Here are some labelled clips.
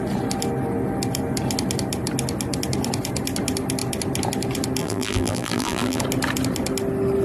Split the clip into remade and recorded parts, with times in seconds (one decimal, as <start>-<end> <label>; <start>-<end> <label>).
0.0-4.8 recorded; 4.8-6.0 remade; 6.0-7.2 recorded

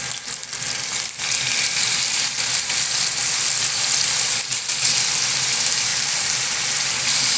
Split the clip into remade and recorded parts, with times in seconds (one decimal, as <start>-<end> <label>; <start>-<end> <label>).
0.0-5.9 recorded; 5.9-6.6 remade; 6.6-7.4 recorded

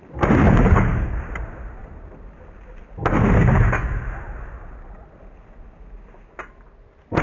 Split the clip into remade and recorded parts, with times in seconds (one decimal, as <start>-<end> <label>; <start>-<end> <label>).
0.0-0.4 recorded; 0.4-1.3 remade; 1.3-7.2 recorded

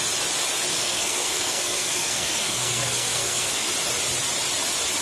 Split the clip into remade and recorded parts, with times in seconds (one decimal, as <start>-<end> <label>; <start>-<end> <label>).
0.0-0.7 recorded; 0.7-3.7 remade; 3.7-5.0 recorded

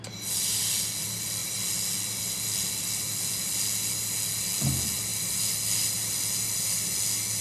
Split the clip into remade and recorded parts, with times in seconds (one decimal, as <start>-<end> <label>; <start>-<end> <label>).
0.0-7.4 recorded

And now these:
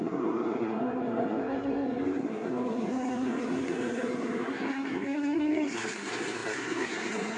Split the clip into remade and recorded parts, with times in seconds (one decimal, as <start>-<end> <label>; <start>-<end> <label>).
0.0-7.4 remade

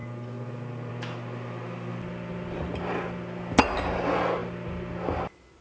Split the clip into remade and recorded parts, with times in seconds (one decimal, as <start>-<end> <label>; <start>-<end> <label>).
0.0-5.6 recorded

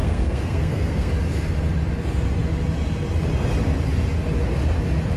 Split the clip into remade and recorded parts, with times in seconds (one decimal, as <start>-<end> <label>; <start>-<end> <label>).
0.0-1.1 remade; 1.1-5.2 recorded